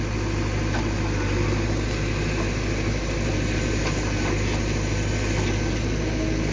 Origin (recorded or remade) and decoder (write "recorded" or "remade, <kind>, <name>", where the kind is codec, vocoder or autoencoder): recorded